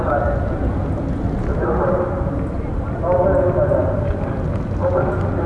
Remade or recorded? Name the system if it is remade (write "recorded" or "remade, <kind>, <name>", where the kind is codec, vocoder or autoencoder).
recorded